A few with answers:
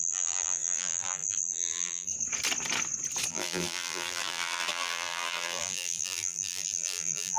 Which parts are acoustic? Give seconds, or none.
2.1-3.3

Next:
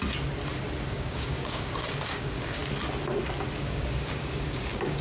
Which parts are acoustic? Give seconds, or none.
0.0-0.9; 2.6-3.6

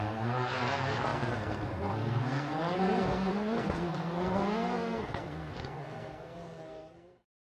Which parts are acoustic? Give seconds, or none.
none